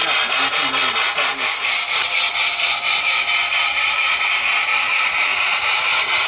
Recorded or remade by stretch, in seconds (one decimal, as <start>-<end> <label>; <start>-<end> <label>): 0.0-3.0 recorded; 3.0-6.3 remade